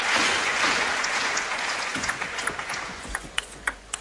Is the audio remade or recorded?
remade